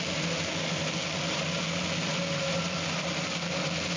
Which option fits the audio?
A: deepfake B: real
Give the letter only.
B